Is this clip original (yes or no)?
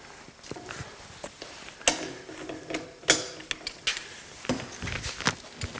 yes